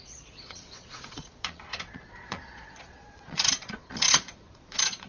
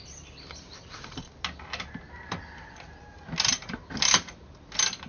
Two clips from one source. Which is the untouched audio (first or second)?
second